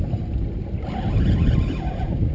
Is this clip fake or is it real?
real